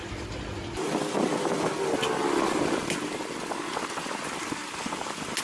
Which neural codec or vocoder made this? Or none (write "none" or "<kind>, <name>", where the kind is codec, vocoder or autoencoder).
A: none